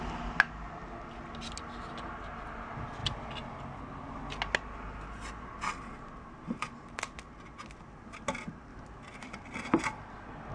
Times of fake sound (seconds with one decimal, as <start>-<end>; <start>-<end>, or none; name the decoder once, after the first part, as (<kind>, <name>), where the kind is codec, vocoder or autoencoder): none